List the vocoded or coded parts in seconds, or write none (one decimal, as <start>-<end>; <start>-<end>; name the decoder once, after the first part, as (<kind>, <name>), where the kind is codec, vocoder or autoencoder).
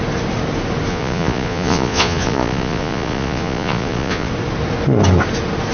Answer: 0.9-4.3 (vocoder, Vocos)